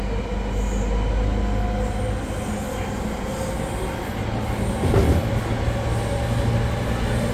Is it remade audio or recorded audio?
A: recorded